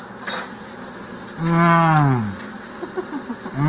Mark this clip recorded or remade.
recorded